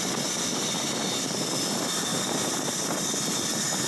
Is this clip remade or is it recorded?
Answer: recorded